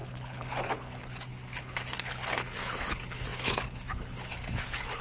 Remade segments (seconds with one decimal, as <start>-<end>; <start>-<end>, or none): 0.0-5.0